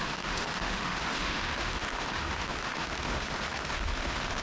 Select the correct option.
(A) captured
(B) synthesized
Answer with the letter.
B